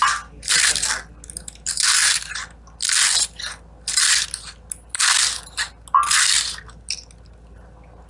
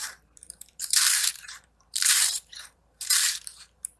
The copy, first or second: second